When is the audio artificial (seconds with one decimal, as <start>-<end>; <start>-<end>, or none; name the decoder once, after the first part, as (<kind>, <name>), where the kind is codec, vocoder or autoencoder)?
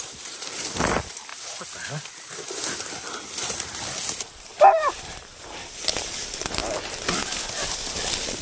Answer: 0.0-1.3 (vocoder, BigVGAN v2); 3.5-6.6; 7.7-8.4